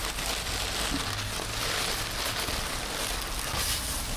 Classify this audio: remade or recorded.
recorded